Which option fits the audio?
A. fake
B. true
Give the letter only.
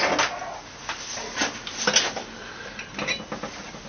B